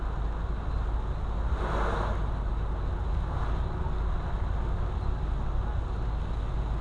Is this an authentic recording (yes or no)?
yes